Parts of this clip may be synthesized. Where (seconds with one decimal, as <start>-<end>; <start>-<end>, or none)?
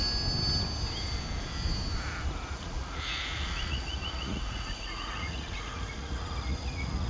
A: 2.5-7.1